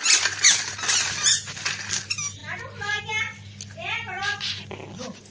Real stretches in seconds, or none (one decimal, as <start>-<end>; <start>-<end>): 0.0-5.3